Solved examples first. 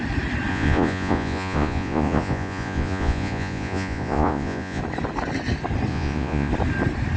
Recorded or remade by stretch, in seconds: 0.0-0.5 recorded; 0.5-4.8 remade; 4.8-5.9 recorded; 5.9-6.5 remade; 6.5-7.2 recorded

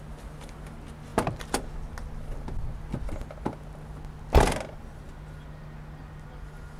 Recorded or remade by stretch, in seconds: 0.0-6.8 recorded

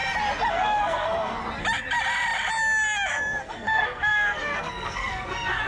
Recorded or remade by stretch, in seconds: 0.0-0.5 recorded; 0.5-1.4 remade; 1.4-3.1 recorded; 3.1-5.7 remade

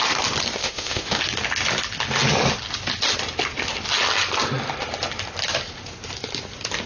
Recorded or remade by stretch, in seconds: 0.0-0.6 recorded; 0.6-1.2 remade; 1.2-6.9 recorded

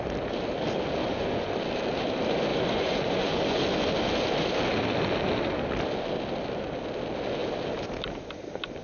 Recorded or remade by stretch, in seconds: 0.0-1.0 recorded; 1.0-1.6 remade; 1.6-2.5 recorded; 2.5-3.6 remade; 3.6-8.8 recorded

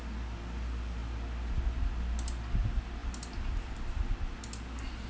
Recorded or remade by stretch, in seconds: 0.0-5.1 recorded

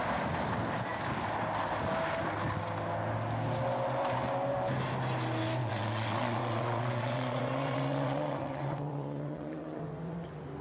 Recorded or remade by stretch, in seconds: 0.0-5.6 recorded; 5.6-9.8 remade; 9.8-10.6 recorded